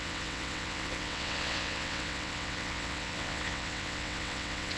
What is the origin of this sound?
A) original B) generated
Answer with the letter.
B